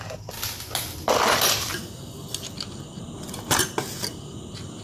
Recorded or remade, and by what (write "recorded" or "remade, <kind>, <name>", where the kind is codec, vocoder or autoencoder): recorded